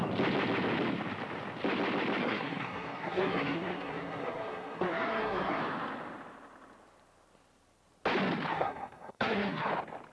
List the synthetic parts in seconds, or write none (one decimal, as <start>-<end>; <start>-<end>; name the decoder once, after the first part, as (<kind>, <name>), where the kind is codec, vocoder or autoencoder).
2.2-5.6 (codec, SNAC); 8.5-9.7